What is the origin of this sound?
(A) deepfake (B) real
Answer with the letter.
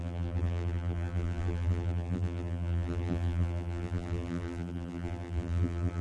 A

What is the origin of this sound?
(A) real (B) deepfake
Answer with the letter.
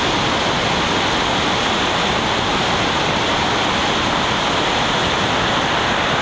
A